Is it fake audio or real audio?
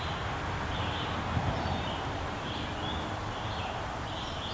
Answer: real